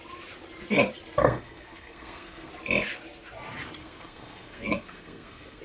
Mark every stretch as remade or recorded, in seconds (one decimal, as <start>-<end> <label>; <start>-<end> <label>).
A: 0.0-1.2 recorded; 1.2-2.5 remade; 2.5-3.8 recorded; 3.8-5.6 remade